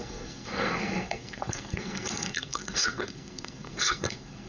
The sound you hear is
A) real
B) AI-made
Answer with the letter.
B